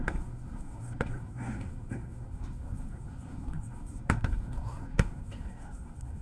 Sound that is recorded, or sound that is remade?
remade